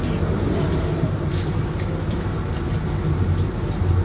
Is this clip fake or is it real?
real